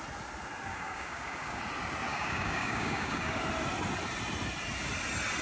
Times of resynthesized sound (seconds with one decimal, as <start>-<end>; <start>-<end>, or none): 0.7-1.6; 2.1-3.4